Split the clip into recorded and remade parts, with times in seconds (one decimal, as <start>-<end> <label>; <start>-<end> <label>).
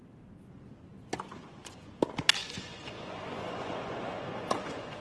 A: 0.0-1.3 recorded; 1.3-1.9 remade; 1.9-2.4 recorded; 2.4-5.0 remade